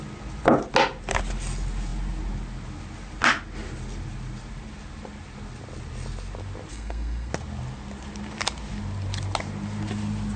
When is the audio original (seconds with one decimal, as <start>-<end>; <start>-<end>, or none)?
0.0-6.7; 7.3-10.4